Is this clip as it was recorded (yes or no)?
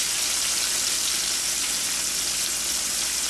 yes